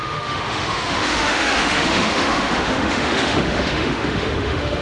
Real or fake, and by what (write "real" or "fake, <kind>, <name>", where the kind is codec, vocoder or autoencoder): fake, autoencoder, DAC-VAE